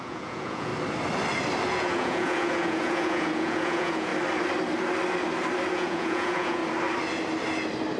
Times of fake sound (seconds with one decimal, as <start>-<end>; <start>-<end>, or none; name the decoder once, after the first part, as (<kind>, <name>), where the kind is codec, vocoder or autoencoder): 0.0-0.7 (vocoder, Vocos); 1.7-4.1; 5.7-6.6